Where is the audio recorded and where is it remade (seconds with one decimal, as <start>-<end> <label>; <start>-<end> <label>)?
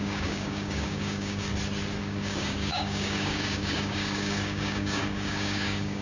0.0-1.5 remade; 1.5-2.0 recorded; 2.0-6.0 remade